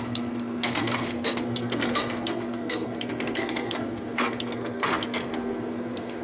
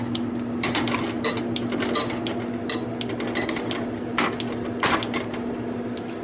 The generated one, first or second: first